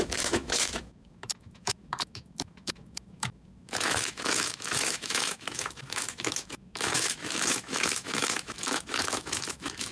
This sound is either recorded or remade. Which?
remade